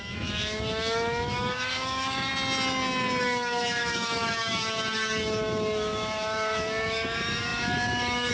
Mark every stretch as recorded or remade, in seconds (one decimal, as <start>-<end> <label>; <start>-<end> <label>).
0.0-2.3 remade; 2.3-3.2 recorded; 3.2-8.3 remade